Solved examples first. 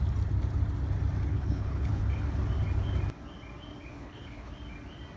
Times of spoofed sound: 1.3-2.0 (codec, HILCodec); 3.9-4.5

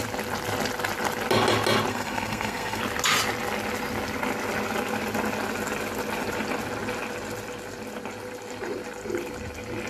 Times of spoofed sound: 1.9-2.8 (codec, SNAC)